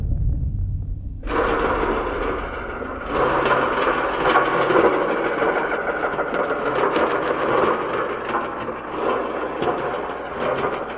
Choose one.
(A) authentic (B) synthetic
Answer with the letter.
A